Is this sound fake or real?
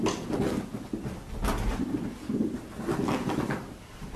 real